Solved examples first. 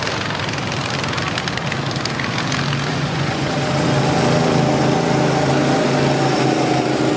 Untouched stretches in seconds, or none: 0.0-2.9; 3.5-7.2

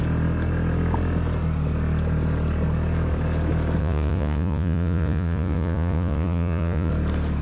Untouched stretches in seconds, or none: 0.0-3.8; 6.9-7.4

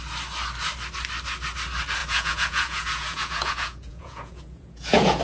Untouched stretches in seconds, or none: 0.0-2.0